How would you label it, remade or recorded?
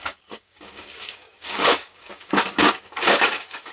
remade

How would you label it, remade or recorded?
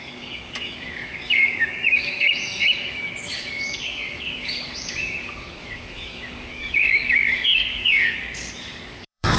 remade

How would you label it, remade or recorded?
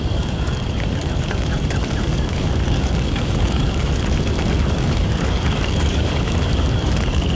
remade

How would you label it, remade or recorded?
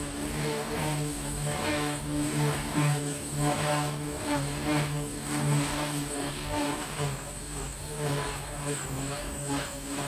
remade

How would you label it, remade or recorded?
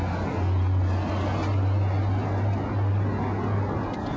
recorded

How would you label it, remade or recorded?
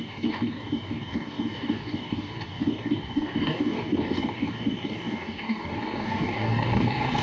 remade